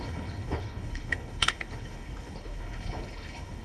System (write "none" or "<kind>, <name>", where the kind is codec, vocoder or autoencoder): codec, HILCodec